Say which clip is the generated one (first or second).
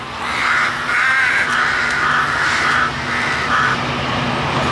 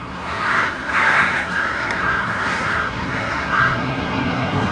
second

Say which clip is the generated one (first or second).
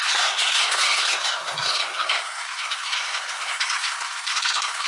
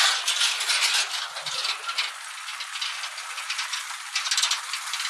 first